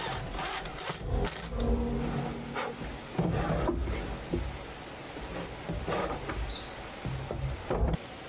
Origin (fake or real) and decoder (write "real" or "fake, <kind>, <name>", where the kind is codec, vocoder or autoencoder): real